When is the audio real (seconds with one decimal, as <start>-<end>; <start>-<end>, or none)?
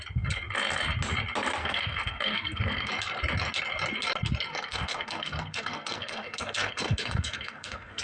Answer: 0.0-1.6; 2.9-4.5